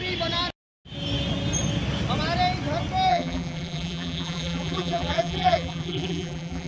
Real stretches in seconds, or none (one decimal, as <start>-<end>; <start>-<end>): 0.0-3.1